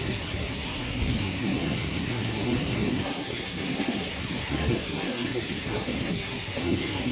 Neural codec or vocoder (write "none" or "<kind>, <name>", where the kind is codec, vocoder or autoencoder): codec, SNAC